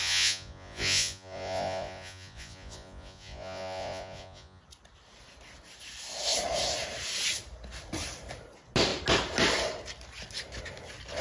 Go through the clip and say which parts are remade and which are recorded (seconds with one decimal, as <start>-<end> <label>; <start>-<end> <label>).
0.0-4.6 remade; 4.6-11.2 recorded